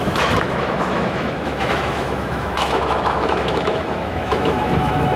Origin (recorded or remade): remade